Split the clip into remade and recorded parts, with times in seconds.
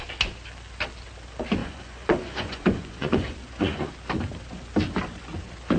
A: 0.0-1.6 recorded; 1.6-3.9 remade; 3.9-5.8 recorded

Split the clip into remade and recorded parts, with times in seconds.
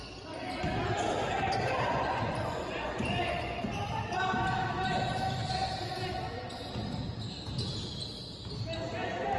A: 0.0-1.9 recorded; 1.9-3.7 remade; 3.7-9.4 recorded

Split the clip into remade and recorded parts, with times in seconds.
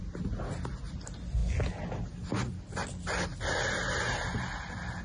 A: 0.0-5.0 recorded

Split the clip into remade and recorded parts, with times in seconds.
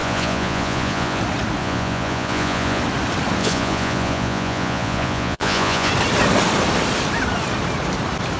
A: 0.0-1.2 remade; 1.2-1.6 recorded; 1.6-2.8 remade; 2.8-3.4 recorded; 3.4-5.9 remade; 5.9-8.4 recorded